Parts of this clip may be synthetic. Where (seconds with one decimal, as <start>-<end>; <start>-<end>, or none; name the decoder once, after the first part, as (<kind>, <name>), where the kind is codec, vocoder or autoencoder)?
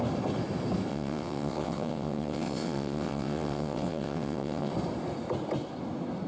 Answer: 0.9-4.7 (vocoder, WaveNeXt)